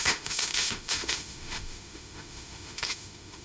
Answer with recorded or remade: remade